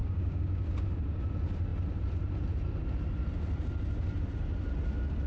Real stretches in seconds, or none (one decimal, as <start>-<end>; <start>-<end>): 0.6-5.3